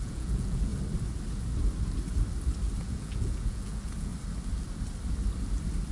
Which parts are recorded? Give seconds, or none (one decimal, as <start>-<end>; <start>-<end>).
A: 0.7-2.8; 4.1-5.9